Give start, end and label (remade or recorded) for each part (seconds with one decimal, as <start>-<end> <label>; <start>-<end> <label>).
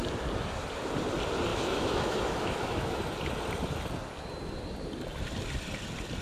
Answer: 0.0-1.5 recorded; 1.5-3.0 remade; 3.0-6.2 recorded